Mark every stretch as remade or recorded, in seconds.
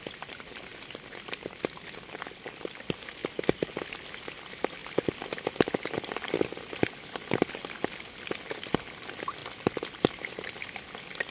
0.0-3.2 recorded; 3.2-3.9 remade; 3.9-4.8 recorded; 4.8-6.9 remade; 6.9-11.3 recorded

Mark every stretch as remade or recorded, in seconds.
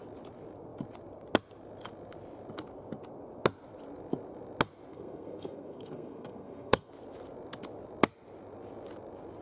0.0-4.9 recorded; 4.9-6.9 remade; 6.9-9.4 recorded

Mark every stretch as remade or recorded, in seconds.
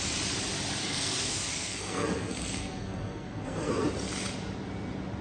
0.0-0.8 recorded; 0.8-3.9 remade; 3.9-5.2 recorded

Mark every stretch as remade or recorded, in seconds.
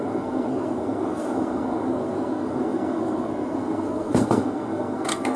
0.0-5.4 remade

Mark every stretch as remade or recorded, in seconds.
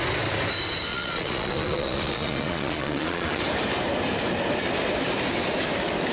0.0-0.9 recorded; 0.9-3.4 remade; 3.4-6.1 recorded